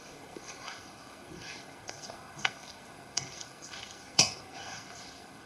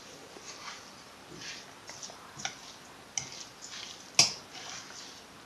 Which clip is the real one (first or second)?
second